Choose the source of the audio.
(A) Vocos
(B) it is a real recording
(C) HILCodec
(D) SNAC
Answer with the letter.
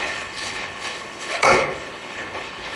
C